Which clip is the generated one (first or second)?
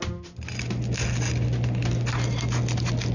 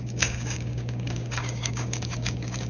second